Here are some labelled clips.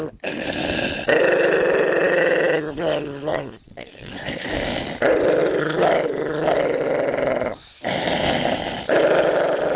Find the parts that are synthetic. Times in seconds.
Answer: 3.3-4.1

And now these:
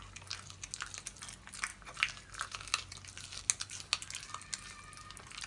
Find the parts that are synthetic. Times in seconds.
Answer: none

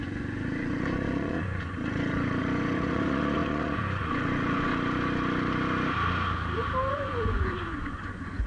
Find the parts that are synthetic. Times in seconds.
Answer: 0.0-4.7; 6.9-8.5

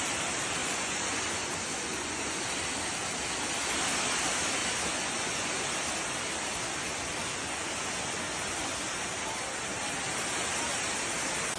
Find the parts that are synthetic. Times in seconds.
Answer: 0.6-2.4; 4.6-5.7; 7.2-9.2

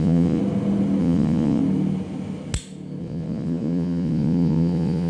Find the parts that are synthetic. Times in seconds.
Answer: 0.0-0.4; 1.0-1.6; 3.0-5.1

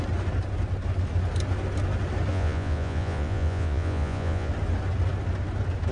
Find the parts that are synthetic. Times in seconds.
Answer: 2.3-4.5